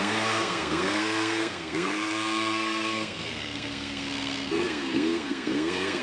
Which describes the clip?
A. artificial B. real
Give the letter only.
A